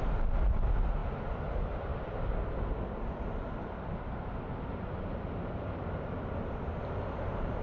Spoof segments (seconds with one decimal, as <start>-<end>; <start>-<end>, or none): 1.9-2.6